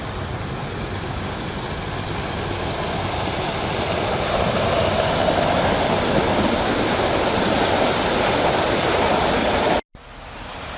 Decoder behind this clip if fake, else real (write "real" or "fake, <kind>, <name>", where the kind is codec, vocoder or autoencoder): real